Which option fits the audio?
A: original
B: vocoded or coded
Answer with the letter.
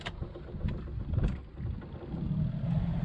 A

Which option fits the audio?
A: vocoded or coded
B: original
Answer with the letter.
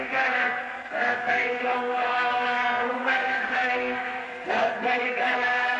A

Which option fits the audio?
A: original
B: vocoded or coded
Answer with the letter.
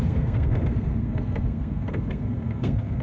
B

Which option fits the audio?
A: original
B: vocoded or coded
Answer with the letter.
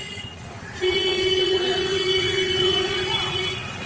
B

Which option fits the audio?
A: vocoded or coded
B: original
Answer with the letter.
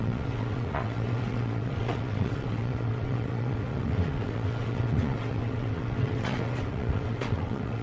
A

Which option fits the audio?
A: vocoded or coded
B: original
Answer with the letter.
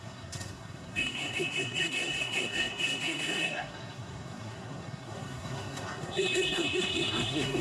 A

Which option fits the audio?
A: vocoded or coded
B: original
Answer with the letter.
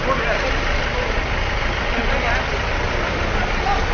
B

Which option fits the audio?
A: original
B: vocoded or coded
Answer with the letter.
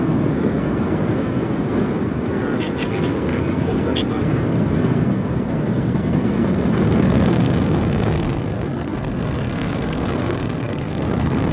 B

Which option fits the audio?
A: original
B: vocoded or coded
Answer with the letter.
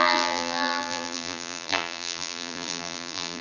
B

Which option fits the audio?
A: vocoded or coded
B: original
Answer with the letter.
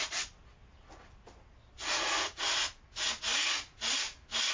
B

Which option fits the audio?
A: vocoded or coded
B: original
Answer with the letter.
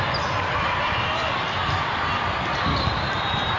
A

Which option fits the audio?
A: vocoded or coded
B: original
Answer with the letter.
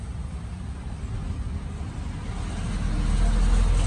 B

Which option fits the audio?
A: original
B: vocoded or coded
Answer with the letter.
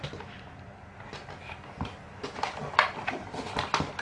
B